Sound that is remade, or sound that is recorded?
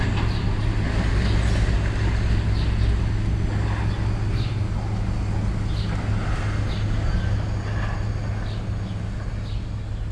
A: recorded